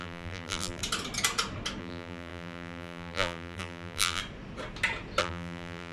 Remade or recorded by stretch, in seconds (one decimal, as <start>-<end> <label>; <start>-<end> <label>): 0.0-0.8 remade; 0.8-1.8 recorded; 1.8-4.2 remade; 4.2-5.2 recorded; 5.2-5.9 remade